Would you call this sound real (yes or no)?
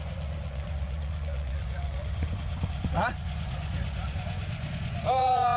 no